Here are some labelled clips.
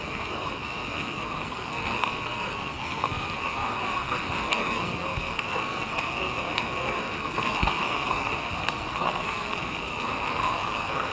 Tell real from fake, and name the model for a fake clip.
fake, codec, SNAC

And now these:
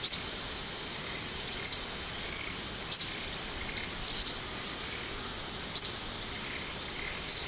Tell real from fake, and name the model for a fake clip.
real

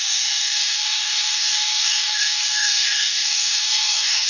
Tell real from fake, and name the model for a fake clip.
fake, codec, DAC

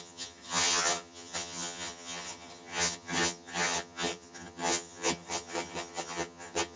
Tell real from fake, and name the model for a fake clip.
fake, vocoder, HiFi-GAN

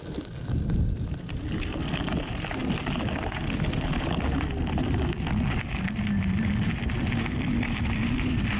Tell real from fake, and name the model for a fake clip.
real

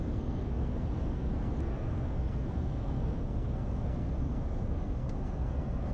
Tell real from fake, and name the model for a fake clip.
fake, codec, SNAC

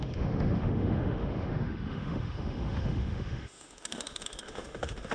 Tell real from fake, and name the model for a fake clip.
fake, autoencoder, DAC-VAE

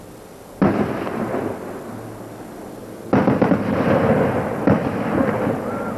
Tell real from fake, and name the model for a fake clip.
real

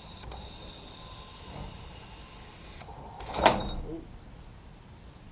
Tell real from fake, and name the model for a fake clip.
real